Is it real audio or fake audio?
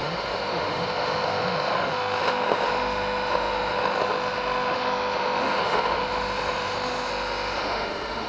fake